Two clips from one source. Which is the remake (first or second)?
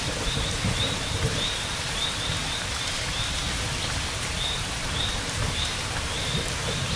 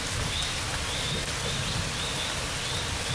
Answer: first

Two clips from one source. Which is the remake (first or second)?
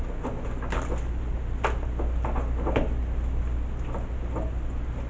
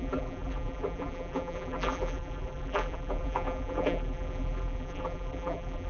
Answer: second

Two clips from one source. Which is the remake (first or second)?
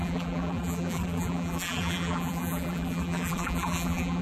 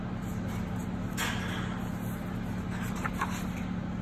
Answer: first